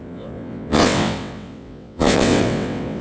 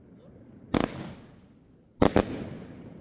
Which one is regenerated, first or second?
first